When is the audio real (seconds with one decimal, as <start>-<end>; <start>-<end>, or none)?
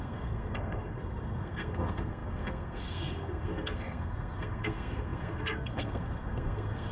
none